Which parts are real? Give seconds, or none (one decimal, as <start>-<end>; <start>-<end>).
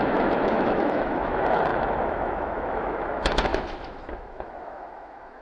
none